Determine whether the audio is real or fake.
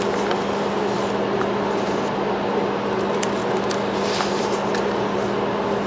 real